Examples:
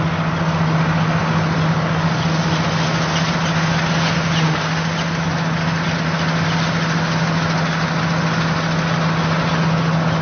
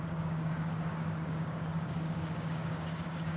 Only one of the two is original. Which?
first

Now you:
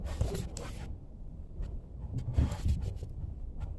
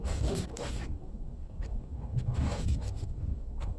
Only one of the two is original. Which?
first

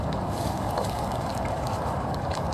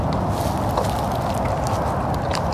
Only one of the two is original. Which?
second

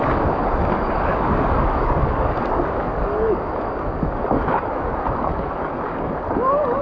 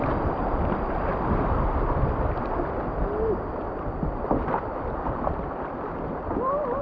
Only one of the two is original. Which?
second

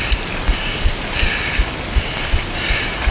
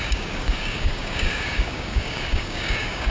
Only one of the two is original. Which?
first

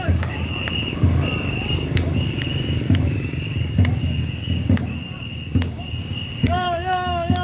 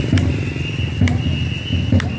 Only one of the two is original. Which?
second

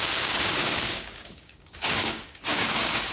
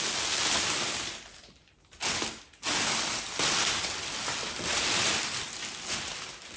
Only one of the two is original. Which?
second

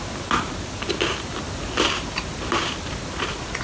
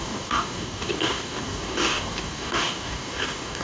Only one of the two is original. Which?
first